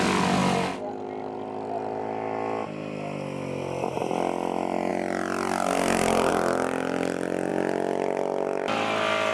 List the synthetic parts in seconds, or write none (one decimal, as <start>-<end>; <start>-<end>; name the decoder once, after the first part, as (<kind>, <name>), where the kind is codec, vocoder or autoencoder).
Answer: none